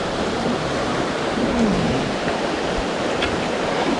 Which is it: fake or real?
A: fake